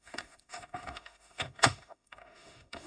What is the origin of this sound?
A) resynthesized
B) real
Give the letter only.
A